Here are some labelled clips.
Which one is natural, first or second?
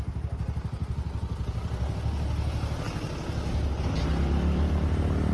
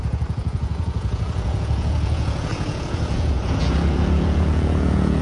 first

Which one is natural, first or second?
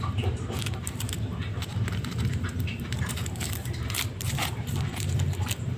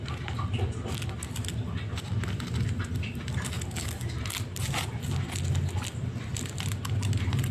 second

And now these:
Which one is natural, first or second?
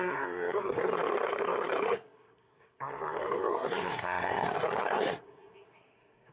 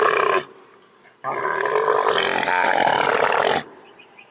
second